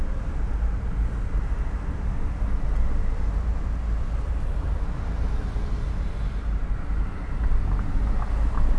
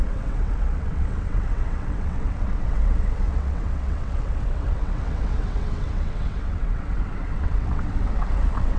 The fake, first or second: second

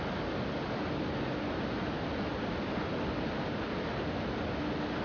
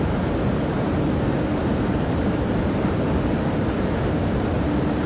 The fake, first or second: second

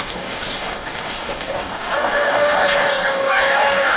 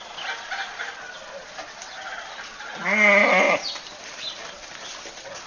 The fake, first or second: first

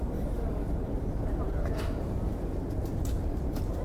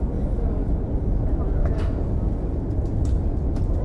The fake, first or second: first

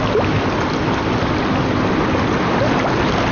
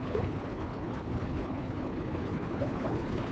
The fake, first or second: second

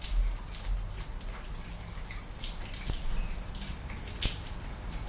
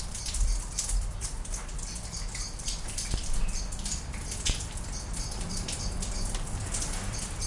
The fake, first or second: second